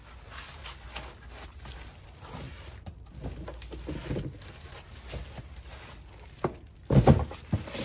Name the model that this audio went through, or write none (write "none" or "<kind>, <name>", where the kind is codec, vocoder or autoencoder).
none